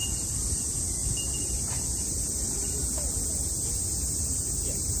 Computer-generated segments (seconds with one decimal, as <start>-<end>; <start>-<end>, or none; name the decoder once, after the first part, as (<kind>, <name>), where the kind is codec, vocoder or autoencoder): 0.5-1.0 (vocoder, BigVGAN v2); 3.7-5.0